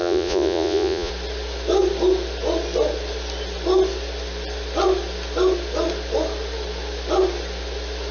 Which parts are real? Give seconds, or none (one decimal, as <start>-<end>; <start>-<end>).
1.1-8.1